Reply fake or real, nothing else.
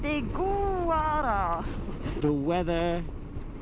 real